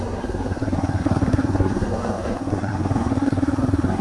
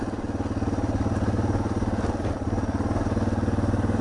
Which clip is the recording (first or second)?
second